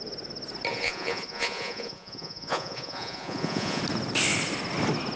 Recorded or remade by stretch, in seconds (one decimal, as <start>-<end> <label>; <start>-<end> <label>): 0.0-0.7 recorded; 0.7-3.8 remade; 3.8-5.2 recorded